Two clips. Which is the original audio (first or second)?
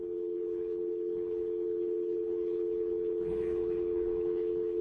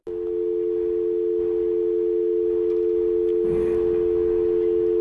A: second